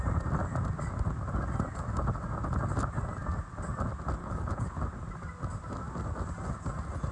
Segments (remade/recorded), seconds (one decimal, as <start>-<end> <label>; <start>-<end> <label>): 0.0-4.2 recorded; 4.2-4.8 remade; 4.8-7.1 recorded